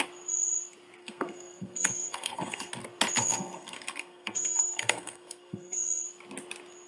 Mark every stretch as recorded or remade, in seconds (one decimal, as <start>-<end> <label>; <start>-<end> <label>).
0.0-1.0 recorded; 1.0-2.7 remade; 2.7-3.2 recorded; 3.2-6.0 remade; 6.0-6.9 recorded